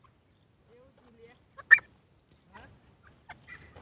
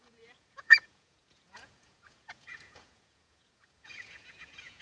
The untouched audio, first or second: first